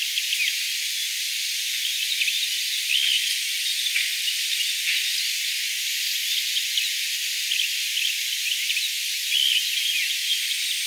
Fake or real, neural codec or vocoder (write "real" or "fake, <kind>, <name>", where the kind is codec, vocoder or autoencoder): real